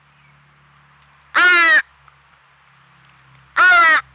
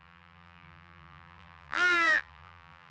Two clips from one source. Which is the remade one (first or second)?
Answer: second